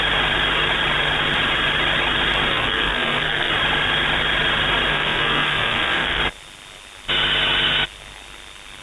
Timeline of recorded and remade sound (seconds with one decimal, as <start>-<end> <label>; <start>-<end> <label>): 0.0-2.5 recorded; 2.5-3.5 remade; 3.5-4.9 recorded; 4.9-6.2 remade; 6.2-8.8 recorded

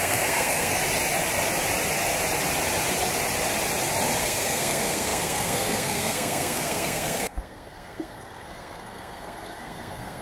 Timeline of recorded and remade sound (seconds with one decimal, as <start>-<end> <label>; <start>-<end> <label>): 0.0-0.8 remade; 0.8-4.2 recorded; 4.2-10.2 remade

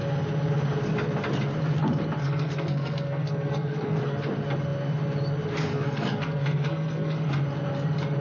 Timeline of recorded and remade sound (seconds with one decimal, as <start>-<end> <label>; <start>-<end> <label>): 0.0-2.2 recorded; 2.2-4.0 remade; 4.0-5.7 recorded; 5.7-7.3 remade; 7.3-8.2 recorded

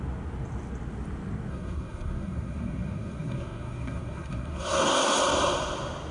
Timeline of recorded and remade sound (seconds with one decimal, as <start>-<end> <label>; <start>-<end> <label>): 0.0-1.5 recorded; 1.5-5.2 remade; 5.2-6.1 recorded

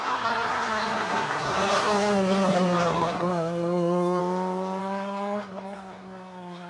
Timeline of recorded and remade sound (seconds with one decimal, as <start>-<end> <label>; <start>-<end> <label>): 0.0-4.2 remade; 4.2-4.8 recorded; 4.8-6.7 remade

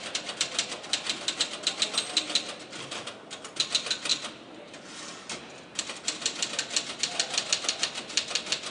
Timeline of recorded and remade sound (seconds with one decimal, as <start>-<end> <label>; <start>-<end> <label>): 0.0-8.7 recorded

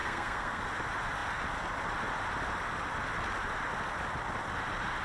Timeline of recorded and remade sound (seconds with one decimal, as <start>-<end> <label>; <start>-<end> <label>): 0.0-0.6 remade; 0.6-5.0 recorded